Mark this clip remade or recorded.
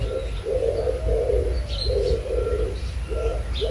recorded